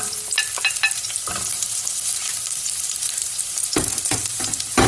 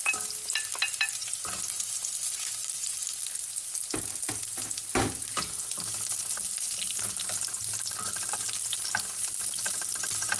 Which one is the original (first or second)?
second